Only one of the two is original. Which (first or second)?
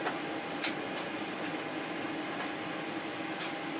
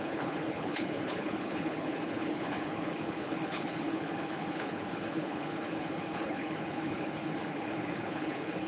first